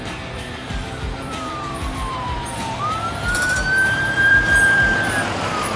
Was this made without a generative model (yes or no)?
no